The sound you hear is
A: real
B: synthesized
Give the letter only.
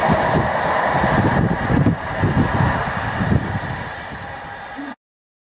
A